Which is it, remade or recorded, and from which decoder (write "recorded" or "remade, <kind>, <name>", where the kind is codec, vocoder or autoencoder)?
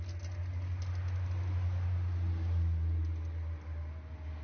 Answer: recorded